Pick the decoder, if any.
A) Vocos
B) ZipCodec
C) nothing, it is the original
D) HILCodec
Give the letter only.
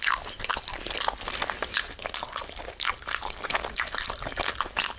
C